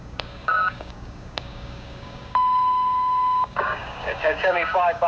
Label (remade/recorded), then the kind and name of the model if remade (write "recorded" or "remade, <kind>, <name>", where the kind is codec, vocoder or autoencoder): remade, codec, DAC